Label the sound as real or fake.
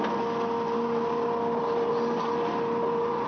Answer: real